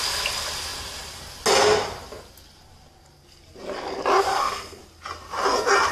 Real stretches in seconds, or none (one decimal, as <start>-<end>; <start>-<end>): 0.0-4.3; 4.8-5.9